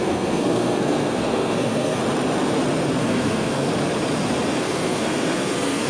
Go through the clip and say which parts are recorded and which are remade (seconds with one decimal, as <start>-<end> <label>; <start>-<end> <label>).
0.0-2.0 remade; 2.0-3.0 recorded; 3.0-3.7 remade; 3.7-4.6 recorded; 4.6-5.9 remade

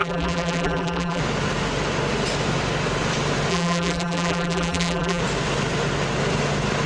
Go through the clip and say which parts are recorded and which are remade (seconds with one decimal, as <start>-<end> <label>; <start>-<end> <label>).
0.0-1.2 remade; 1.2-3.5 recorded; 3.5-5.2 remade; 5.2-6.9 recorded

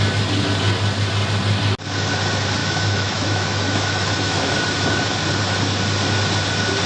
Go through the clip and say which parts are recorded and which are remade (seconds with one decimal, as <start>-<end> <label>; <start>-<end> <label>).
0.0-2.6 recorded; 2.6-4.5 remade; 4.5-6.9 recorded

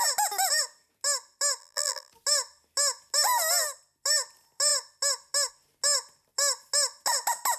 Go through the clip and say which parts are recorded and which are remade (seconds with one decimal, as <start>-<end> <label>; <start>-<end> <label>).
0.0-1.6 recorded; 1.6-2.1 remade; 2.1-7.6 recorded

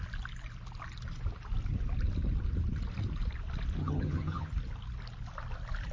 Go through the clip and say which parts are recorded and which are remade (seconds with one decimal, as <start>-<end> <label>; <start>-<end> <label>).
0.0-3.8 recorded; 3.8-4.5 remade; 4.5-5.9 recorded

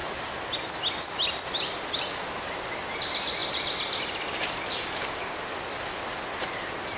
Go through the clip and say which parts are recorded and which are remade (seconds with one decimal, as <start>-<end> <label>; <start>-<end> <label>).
0.0-7.0 recorded

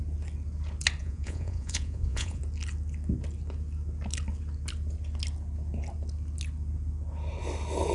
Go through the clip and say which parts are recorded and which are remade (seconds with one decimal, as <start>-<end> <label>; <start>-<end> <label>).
0.0-1.0 recorded; 1.0-2.4 remade; 2.4-7.9 recorded

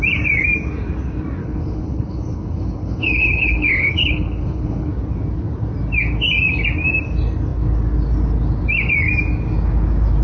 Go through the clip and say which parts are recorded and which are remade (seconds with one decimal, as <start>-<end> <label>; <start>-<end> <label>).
0.0-1.4 recorded; 1.4-4.9 remade; 4.9-10.2 recorded